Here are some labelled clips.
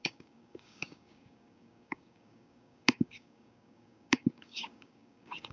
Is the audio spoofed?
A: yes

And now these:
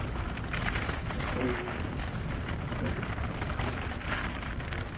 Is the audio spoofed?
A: no